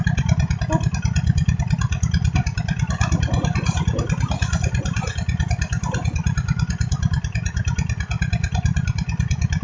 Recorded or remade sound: recorded